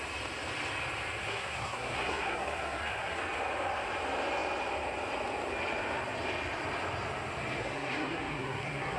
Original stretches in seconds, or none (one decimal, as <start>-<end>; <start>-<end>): 0.0-1.2; 3.2-7.6